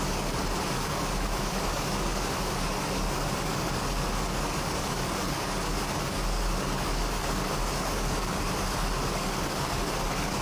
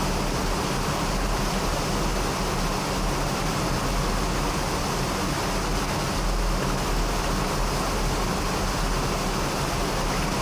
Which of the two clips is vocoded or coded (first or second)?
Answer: first